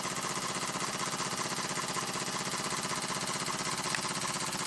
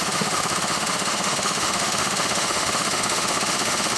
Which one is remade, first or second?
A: second